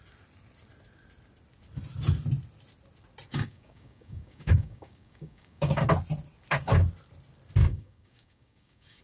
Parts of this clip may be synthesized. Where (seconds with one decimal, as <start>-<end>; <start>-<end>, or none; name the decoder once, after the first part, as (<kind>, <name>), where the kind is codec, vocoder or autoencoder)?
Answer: 3.3-5.8 (codec, DAC); 7.6-9.0